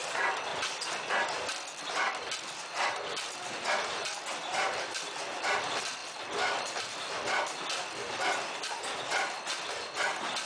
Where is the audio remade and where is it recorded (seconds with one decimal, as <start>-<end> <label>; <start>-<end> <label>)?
0.0-10.5 recorded